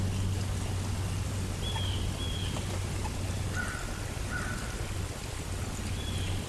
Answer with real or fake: real